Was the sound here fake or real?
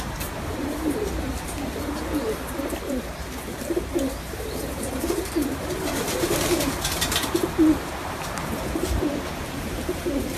fake